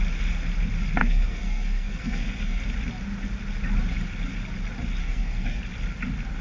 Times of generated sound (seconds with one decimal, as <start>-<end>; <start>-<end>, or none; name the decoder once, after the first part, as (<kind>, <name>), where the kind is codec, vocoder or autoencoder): 1.0-2.6 (codec, SNAC); 5.0-5.6